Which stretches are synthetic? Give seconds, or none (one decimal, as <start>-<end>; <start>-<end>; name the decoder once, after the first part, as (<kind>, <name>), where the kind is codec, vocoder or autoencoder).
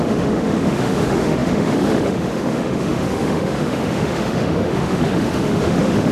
0.0-6.1 (autoencoder, DAC-VAE)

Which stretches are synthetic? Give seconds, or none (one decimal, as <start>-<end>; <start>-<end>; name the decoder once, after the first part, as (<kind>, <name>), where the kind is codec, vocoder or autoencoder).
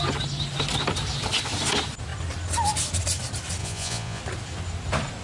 3.6-4.2 (vocoder, Vocos)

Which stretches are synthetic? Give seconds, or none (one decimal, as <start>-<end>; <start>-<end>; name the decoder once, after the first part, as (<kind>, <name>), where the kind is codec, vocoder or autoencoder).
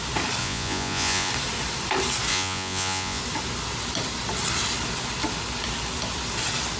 0.4-1.3 (vocoder, Vocos); 2.3-3.2